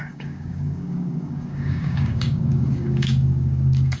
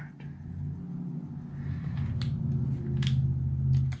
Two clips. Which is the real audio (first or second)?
second